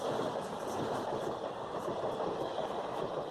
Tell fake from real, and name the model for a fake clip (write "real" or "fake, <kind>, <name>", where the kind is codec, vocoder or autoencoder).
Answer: fake, vocoder, BigVGAN v2